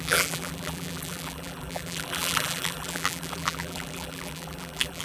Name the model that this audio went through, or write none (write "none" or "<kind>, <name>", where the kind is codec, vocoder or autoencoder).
vocoder, BigVGAN v2